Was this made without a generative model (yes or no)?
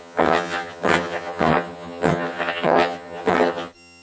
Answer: no